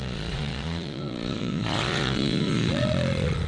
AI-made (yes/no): yes